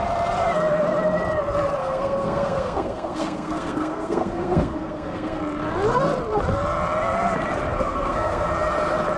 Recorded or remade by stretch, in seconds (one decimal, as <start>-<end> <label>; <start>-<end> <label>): 0.0-1.8 recorded; 1.8-5.4 remade; 5.4-7.7 recorded; 7.7-8.5 remade; 8.5-9.2 recorded